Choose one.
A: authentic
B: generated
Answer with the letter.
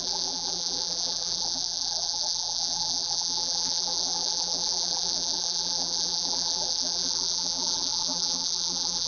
B